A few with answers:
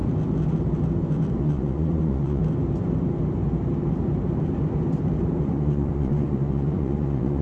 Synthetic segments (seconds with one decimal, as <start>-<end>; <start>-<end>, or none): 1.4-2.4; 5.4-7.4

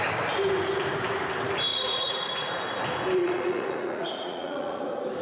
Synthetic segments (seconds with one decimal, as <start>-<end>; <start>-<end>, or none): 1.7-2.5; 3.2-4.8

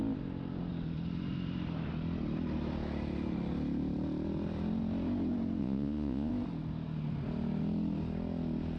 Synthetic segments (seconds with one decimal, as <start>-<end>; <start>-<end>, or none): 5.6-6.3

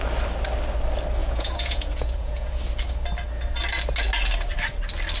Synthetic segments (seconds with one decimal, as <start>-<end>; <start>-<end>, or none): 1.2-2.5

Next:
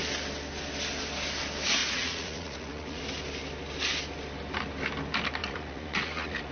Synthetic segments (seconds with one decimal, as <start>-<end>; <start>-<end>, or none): 1.8-3.0; 5.4-6.5